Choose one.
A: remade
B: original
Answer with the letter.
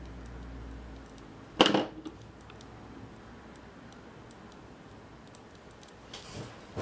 B